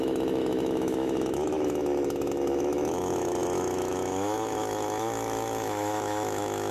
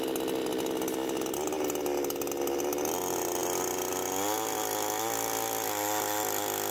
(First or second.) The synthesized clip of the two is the first